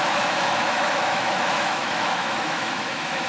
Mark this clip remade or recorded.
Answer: remade